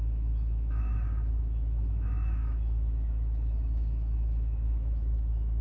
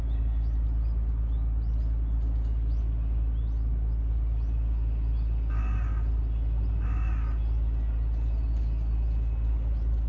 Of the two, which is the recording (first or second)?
second